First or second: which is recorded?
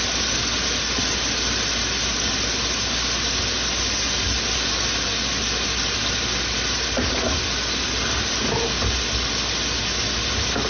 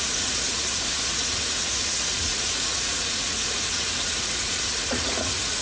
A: first